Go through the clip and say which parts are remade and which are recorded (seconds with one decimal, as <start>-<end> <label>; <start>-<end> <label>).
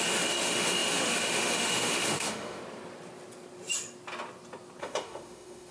0.0-2.6 remade; 2.6-4.8 recorded; 4.8-5.7 remade